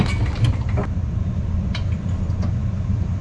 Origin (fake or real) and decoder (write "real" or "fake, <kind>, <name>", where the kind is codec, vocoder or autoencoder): real